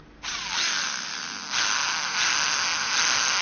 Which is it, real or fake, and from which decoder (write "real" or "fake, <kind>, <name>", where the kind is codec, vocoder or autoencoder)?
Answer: real